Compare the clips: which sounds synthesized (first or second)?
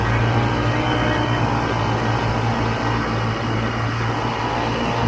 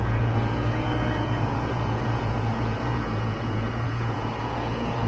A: second